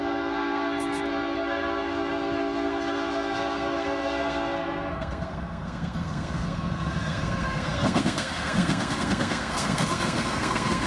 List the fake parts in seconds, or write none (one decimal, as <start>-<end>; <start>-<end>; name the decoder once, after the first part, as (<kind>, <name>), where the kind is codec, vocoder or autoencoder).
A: 0.0-10.9 (codec, SNAC)